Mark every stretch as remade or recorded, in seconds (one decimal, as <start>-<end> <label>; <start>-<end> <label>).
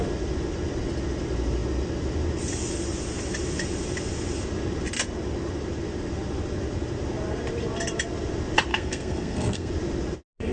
0.0-8.7 recorded; 8.7-9.7 remade; 9.7-10.5 recorded